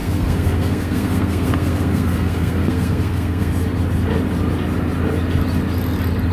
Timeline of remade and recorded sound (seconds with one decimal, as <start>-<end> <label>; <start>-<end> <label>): 0.0-3.5 remade; 3.5-6.3 recorded